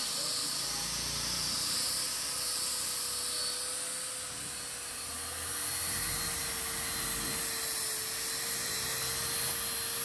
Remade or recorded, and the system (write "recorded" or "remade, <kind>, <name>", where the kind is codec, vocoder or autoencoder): recorded